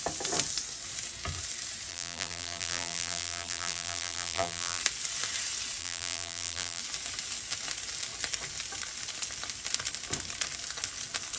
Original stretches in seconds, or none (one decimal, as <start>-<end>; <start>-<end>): 0.0-1.9; 4.8-5.8; 6.8-11.4